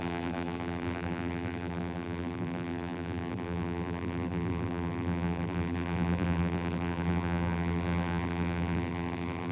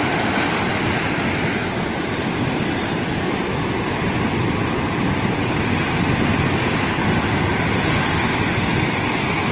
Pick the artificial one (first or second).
first